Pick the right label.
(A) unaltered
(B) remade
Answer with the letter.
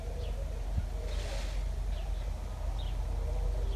A